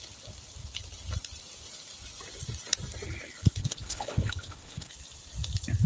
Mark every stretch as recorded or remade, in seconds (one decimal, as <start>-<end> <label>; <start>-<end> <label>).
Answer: 0.0-3.6 recorded; 3.6-4.9 remade; 4.9-5.9 recorded